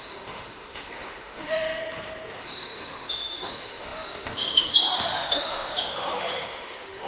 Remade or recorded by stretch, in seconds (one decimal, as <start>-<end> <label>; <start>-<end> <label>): 0.0-1.8 remade; 1.8-2.4 recorded; 2.4-7.1 remade

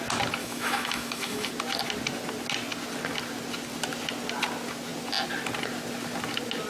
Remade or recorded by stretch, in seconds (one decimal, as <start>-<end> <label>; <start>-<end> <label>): 0.0-0.4 recorded; 0.4-1.5 remade; 1.5-6.7 recorded

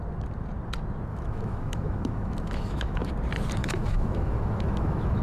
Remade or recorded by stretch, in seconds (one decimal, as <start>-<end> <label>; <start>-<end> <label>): 0.0-1.1 recorded; 1.1-3.1 remade; 3.1-3.6 recorded; 3.6-5.2 remade

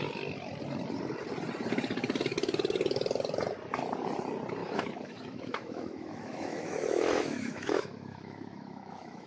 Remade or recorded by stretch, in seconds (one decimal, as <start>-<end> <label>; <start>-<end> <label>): 0.0-4.6 recorded; 4.6-9.3 remade

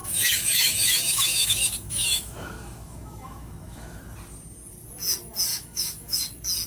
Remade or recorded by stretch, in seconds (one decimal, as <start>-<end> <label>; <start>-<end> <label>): 0.0-4.0 remade; 4.0-5.5 recorded; 5.5-6.2 remade; 6.2-6.7 recorded

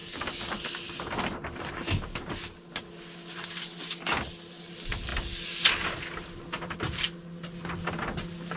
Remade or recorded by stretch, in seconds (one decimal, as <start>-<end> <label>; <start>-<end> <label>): 0.0-8.6 recorded

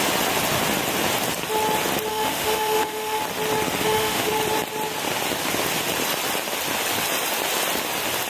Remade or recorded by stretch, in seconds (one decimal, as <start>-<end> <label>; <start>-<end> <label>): 0.0-2.1 recorded; 2.1-3.2 remade; 3.2-3.8 recorded; 3.8-4.3 remade; 4.3-8.3 recorded